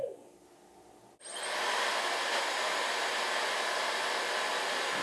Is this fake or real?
real